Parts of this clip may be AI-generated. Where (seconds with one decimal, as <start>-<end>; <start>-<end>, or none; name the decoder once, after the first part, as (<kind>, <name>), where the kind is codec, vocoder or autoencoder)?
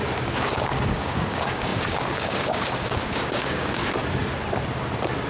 0.0-3.8 (codec, DAC)